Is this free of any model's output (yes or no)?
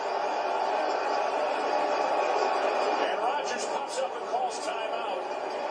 yes